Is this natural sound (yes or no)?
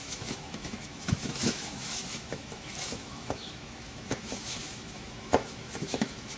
no